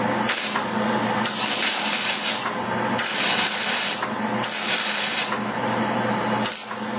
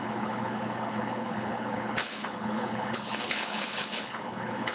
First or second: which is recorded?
first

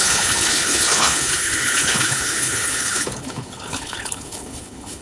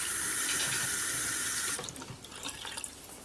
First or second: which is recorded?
second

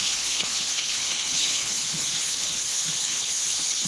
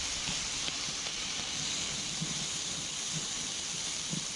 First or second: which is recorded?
second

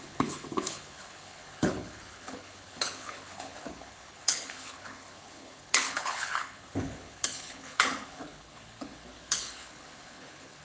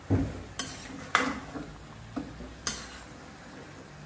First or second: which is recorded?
second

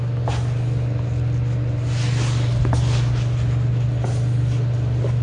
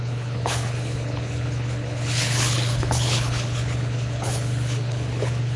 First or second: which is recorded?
first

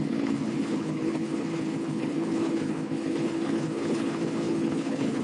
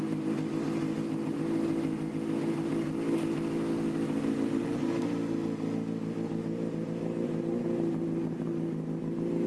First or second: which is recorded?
second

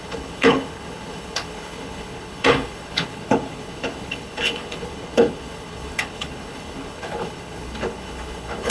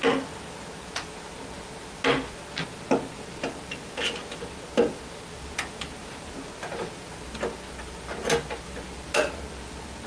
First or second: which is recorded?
second